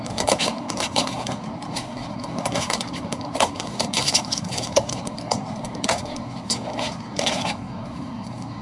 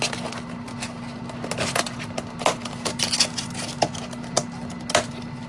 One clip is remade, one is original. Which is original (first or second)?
second